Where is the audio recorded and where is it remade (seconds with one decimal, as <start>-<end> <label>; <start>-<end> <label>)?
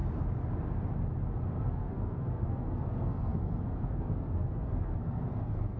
0.0-1.6 recorded; 1.6-5.8 remade